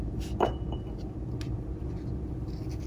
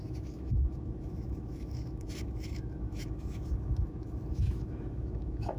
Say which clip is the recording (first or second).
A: first